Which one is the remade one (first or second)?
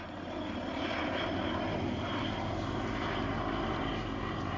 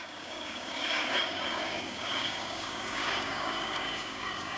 second